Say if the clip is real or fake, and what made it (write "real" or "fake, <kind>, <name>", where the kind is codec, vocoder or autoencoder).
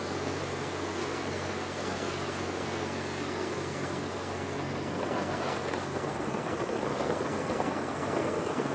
fake, codec, SNAC